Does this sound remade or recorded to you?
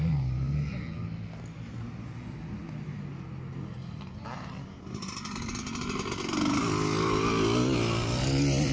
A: recorded